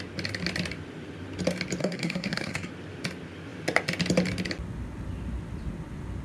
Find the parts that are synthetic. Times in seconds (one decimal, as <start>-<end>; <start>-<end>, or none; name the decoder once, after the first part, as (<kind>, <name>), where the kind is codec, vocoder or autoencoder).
1.8-2.7 (codec, SNAC)